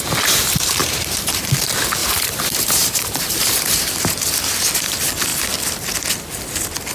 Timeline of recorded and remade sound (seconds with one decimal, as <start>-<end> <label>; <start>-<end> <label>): 0.0-0.8 recorded; 0.8-1.5 remade; 1.5-2.0 recorded; 2.0-4.0 remade; 4.0-6.9 recorded